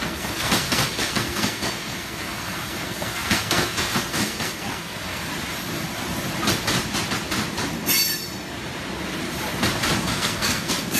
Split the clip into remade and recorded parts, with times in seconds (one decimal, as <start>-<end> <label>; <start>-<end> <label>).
0.0-5.3 remade; 5.3-10.0 recorded; 10.0-11.0 remade